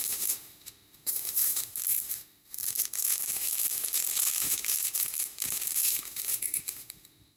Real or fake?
fake